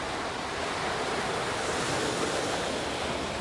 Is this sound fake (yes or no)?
no